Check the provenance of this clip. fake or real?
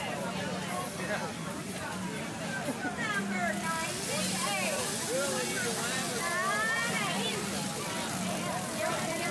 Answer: real